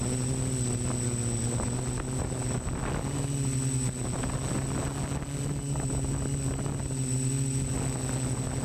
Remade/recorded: recorded